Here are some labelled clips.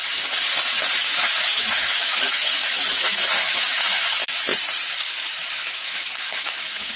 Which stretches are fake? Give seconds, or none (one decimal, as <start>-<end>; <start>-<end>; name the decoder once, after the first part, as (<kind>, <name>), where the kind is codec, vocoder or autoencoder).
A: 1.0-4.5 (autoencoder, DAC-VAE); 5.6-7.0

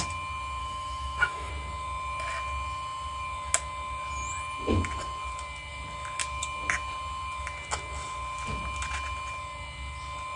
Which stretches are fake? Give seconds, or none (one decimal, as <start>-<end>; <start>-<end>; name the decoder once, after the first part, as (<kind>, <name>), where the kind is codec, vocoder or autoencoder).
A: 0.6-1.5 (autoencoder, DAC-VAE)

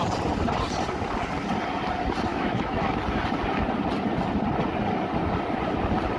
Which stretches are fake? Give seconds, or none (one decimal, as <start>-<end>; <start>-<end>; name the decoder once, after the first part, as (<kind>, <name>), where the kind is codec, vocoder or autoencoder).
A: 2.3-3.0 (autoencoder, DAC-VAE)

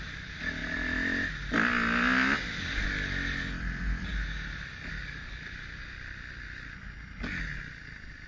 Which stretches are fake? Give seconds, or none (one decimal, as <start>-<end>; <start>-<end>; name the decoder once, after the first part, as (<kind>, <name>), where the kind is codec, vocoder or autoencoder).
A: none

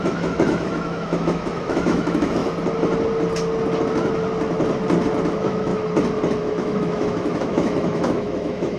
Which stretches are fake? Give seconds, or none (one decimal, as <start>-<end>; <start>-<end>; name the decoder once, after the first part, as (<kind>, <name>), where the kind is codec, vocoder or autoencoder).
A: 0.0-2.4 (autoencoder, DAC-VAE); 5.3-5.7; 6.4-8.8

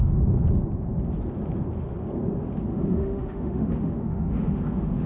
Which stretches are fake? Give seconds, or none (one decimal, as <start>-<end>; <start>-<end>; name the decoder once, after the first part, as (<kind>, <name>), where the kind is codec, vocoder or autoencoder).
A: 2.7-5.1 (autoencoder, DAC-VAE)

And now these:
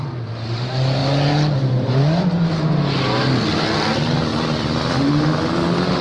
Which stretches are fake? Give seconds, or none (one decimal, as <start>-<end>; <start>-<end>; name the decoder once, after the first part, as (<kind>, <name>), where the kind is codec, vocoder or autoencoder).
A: none